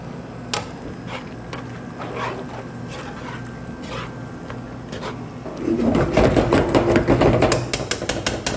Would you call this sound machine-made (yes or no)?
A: no